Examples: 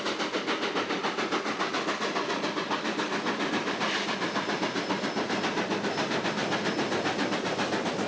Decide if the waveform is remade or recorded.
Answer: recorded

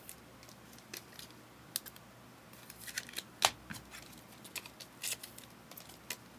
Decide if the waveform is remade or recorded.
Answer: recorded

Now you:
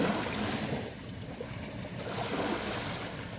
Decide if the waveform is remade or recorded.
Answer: recorded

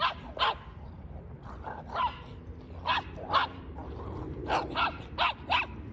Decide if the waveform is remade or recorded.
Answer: recorded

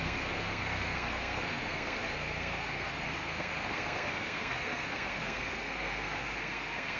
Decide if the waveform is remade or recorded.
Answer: remade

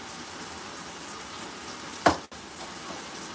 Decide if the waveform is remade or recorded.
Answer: recorded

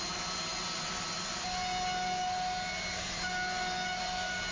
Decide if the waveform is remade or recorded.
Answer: recorded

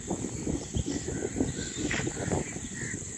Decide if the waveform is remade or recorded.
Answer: recorded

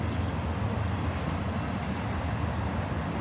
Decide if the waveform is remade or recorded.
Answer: recorded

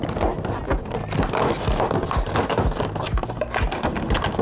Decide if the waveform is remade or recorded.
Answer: recorded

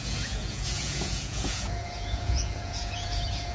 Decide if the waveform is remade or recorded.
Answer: remade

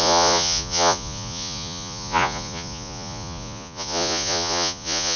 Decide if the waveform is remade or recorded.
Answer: remade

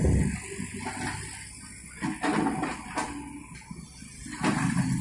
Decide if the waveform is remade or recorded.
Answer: recorded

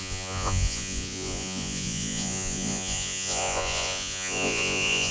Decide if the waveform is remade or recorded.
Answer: remade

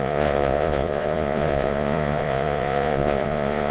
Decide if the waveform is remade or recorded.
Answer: remade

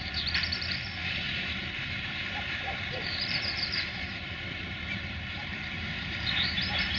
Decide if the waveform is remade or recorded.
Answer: remade